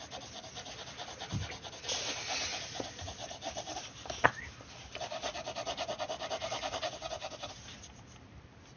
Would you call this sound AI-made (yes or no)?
no